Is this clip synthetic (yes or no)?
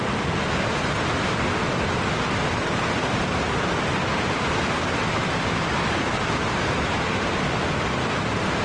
no